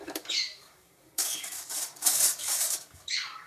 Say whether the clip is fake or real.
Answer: fake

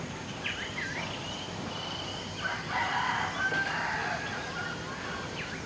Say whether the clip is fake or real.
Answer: real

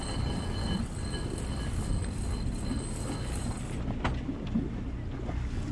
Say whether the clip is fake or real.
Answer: real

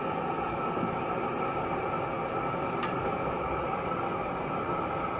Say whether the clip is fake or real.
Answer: real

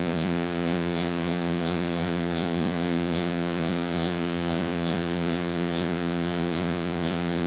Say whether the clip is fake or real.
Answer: fake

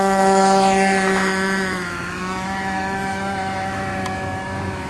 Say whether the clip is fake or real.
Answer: fake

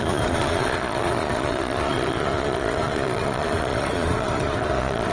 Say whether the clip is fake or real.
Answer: fake